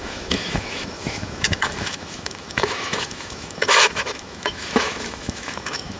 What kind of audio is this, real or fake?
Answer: fake